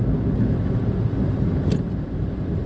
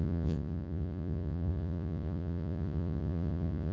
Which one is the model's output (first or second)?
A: second